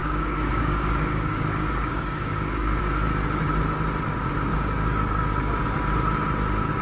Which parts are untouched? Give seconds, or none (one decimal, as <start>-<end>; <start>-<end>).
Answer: 2.8-4.5; 5.6-6.8